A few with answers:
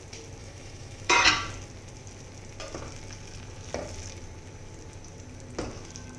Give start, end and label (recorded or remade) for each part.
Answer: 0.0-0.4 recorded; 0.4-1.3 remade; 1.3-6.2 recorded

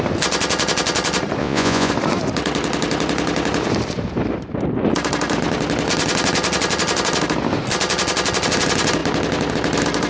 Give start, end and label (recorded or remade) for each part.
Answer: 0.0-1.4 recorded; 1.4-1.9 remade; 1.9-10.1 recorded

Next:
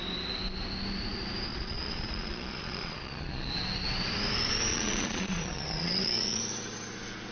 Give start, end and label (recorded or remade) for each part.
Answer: 0.0-1.5 recorded; 1.5-3.5 remade; 3.5-4.7 recorded; 4.7-6.4 remade; 6.4-7.3 recorded

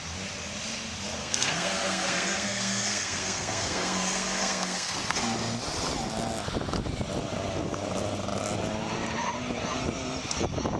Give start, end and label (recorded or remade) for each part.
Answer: 0.0-1.2 recorded; 1.2-5.2 remade; 5.2-10.8 recorded

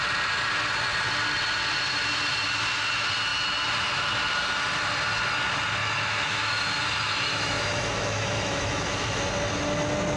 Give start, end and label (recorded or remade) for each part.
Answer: 0.0-5.8 recorded; 5.8-9.2 remade; 9.2-10.2 recorded